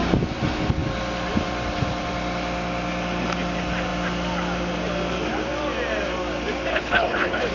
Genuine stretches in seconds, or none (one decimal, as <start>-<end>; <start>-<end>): 0.0-6.7